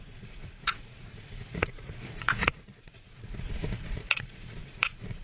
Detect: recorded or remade remade